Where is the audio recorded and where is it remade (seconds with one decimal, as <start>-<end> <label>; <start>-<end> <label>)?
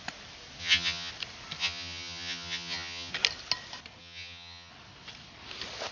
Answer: 0.0-0.6 recorded; 0.6-1.1 remade; 1.1-1.6 recorded; 1.6-3.1 remade; 3.1-4.0 recorded; 4.0-4.7 remade; 4.7-5.9 recorded